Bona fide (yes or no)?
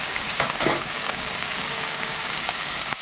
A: no